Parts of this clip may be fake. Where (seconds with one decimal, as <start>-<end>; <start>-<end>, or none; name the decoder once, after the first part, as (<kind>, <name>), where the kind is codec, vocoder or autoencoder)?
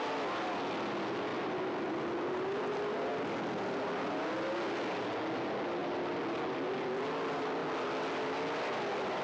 1.3-3.0 (vocoder, BigVGAN v2)